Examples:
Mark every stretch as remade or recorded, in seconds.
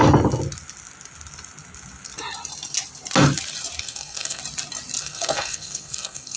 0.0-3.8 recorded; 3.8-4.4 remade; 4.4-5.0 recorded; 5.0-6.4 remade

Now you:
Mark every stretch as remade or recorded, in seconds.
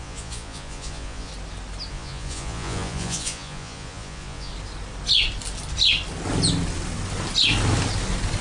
0.0-1.3 remade; 1.3-1.9 recorded; 1.9-4.5 remade; 4.5-8.4 recorded